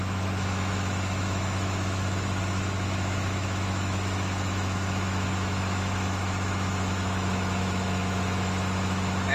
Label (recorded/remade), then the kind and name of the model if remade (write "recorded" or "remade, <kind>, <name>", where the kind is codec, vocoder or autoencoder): remade, autoencoder, DAC-VAE